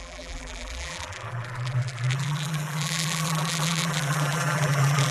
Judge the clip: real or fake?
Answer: fake